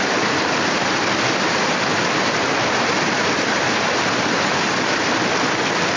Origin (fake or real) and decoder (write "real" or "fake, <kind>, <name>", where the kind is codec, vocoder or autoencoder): real